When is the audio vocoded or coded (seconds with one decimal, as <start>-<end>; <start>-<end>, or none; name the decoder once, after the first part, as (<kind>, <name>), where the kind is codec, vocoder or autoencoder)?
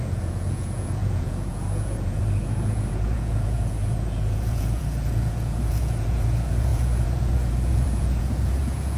0.0-9.0 (vocoder, Vocos)